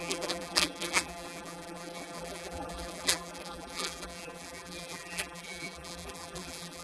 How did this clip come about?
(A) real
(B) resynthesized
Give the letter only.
B